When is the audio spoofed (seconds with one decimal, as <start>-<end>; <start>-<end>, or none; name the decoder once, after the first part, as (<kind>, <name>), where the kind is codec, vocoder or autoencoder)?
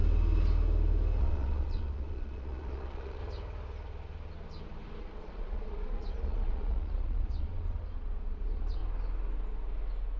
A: 1.2-3.2 (vocoder, Vocos); 5.0-8.8